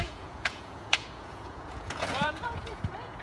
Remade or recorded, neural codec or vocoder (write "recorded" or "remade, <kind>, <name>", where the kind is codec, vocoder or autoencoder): remade, vocoder, Vocos